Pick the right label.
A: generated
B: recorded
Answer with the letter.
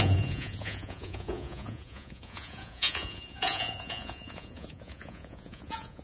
A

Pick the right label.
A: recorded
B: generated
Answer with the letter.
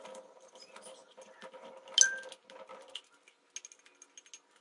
A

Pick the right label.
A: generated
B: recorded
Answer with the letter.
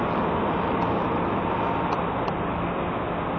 B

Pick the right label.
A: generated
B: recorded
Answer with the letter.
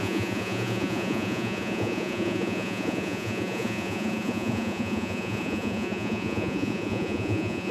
A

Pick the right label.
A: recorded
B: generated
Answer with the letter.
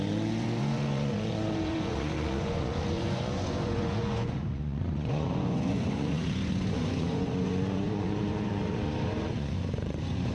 B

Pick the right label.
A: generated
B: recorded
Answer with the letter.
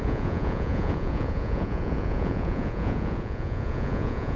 A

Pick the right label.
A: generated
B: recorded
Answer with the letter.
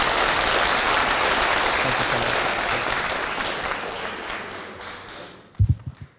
B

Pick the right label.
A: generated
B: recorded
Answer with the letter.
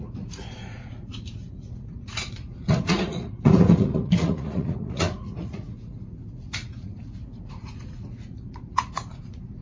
A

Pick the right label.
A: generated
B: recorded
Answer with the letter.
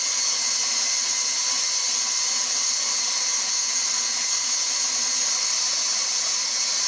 B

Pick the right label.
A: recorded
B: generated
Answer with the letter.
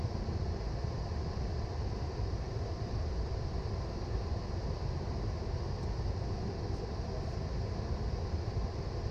A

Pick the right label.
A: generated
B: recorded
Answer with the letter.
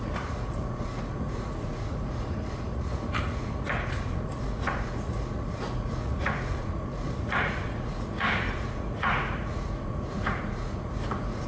A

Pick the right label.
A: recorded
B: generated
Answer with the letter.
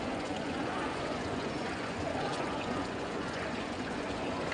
B